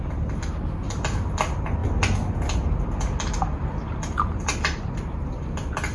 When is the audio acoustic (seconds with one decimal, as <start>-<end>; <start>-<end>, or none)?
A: 0.0-5.9